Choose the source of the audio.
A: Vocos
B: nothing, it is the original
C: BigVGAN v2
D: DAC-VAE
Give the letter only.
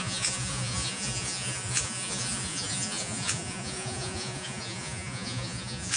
A